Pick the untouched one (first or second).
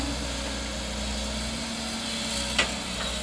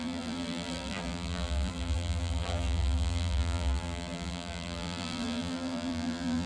first